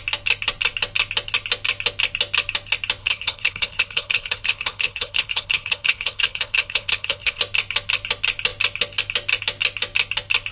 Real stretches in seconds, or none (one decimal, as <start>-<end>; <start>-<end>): 0.0-3.0; 7.4-10.5